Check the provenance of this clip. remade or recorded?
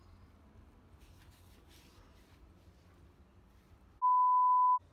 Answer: recorded